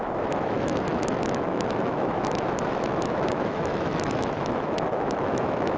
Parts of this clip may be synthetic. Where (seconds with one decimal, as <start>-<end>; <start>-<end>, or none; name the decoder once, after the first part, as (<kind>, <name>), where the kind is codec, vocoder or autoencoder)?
0.0-5.8 (autoencoder, DAC-VAE)